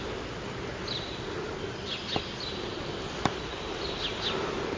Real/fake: real